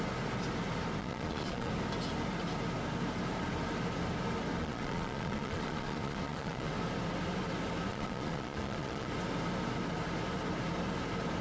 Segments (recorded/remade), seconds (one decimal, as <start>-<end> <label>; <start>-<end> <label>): 0.0-1.0 recorded; 1.0-1.7 remade; 1.7-4.6 recorded; 4.6-6.7 remade; 6.7-7.9 recorded; 7.9-9.1 remade; 9.1-11.4 recorded